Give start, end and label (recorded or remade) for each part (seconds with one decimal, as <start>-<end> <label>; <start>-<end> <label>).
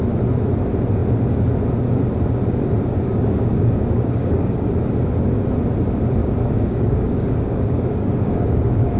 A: 0.0-2.9 recorded; 2.9-4.7 remade; 4.7-6.2 recorded; 6.2-9.0 remade